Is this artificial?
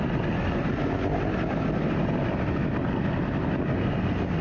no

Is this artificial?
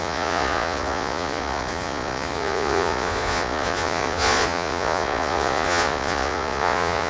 yes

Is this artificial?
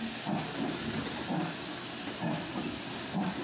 no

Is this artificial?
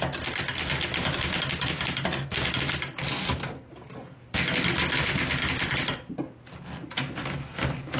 no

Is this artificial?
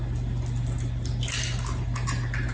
no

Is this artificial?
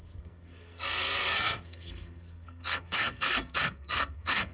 yes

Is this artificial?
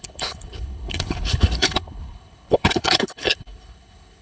yes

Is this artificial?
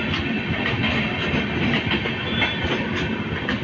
no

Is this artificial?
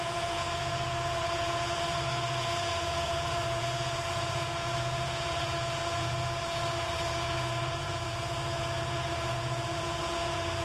yes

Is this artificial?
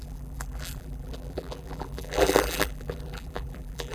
yes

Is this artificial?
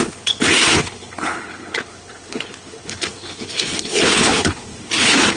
yes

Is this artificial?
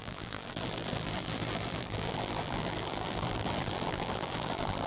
yes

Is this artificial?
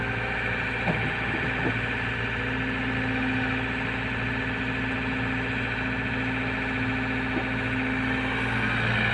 no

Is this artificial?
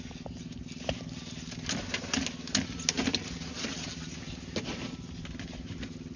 no